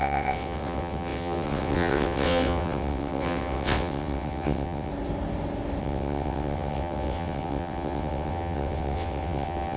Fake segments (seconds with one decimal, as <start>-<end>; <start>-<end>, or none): 0.0-4.9; 5.8-9.8